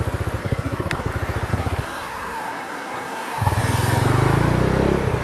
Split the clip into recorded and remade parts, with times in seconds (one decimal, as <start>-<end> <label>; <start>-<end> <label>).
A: 0.0-0.4 recorded; 0.4-1.1 remade; 1.1-1.5 recorded; 1.5-3.6 remade; 3.6-5.2 recorded